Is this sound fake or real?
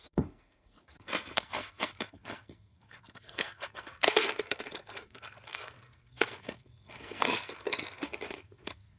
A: fake